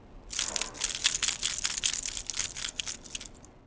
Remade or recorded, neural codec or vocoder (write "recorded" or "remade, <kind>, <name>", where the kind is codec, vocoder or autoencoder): recorded